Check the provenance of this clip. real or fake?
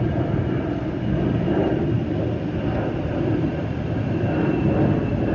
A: fake